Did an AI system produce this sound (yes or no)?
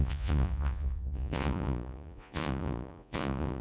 yes